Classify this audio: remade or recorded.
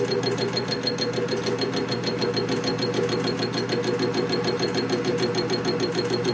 recorded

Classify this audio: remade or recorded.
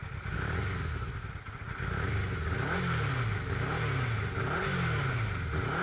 recorded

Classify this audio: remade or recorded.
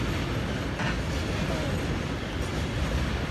recorded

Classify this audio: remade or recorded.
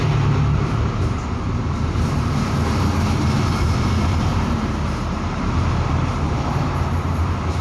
remade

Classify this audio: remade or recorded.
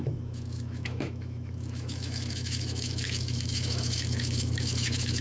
remade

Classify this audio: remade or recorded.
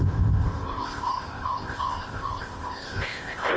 remade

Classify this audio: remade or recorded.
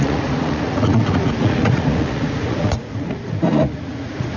remade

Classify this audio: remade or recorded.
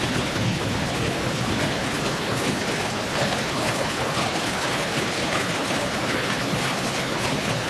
remade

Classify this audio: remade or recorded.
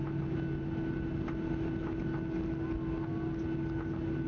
recorded